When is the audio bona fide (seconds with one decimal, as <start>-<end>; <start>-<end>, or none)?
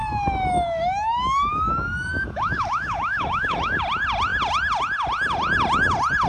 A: 3.8-6.3